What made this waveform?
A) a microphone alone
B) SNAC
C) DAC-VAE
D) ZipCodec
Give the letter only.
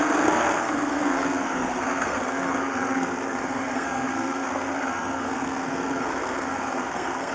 B